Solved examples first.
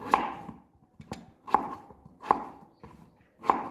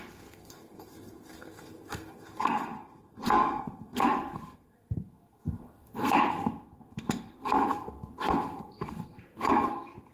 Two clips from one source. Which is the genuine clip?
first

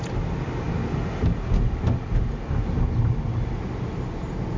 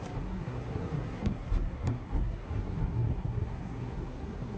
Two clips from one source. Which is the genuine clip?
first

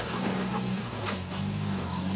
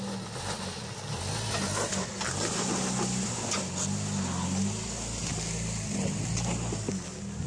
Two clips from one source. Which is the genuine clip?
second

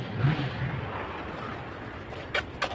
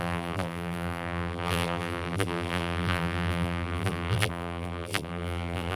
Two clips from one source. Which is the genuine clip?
first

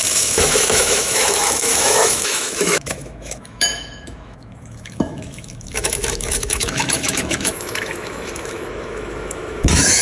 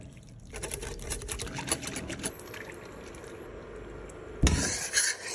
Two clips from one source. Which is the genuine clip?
second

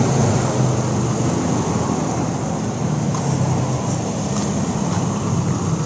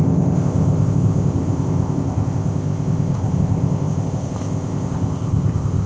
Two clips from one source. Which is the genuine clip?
first